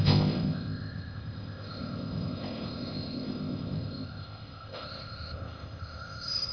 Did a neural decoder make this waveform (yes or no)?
yes